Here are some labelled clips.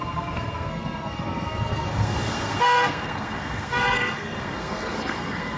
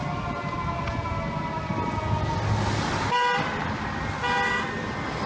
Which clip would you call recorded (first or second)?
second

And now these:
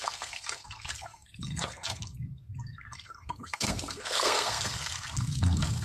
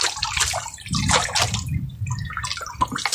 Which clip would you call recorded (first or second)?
second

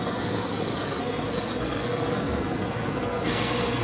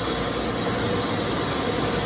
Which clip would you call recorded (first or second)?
second